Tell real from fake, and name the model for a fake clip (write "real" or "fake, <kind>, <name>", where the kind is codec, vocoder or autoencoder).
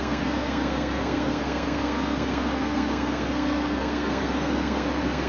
fake, codec, SNAC